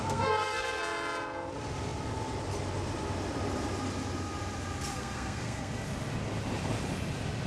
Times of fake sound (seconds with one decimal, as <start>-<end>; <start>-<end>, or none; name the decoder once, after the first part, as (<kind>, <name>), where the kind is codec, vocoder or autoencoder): 0.0-0.8 (codec, SNAC); 4.9-5.7